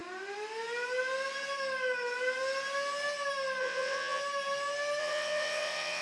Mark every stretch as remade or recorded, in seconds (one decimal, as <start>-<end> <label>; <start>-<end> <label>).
0.0-3.6 recorded; 3.6-4.2 remade; 4.2-5.0 recorded; 5.0-6.0 remade